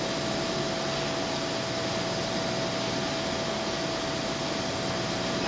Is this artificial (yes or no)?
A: no